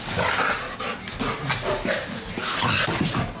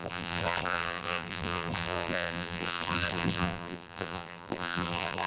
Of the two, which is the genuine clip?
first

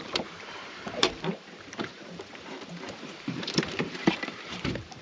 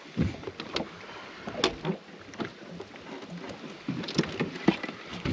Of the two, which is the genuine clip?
second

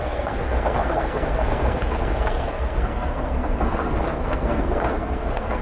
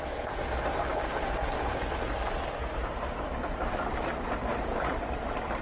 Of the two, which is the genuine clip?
second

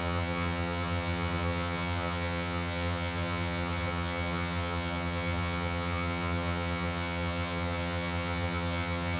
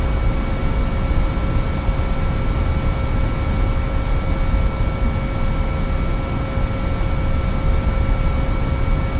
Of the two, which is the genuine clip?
second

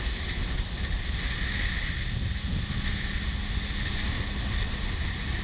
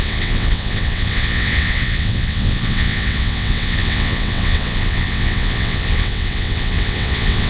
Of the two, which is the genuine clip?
first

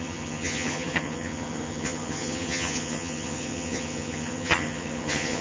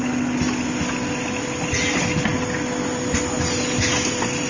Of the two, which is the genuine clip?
second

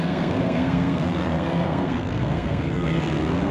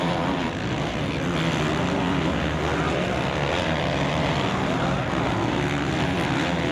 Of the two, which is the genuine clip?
second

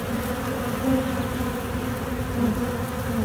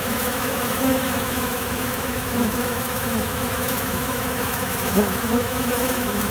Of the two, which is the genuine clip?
first